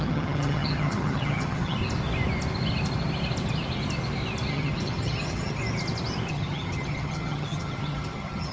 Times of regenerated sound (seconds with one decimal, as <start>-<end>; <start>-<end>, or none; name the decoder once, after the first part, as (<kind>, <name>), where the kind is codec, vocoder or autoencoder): 0.0-1.8 (vocoder, HiFi-GAN); 4.5-5.6; 6.3-8.5